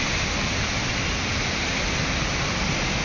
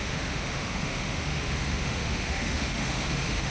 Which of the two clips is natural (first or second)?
first